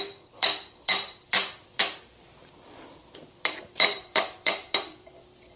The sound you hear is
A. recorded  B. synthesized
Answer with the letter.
B